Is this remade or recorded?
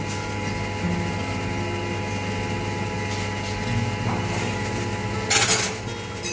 recorded